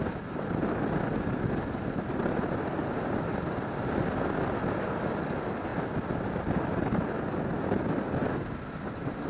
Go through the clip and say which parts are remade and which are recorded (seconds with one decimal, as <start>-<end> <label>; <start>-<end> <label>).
0.0-9.3 recorded